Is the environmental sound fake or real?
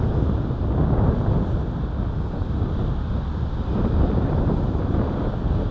real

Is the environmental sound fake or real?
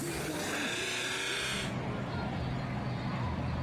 real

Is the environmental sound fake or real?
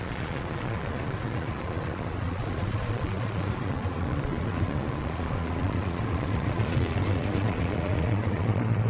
fake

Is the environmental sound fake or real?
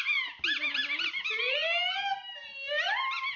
real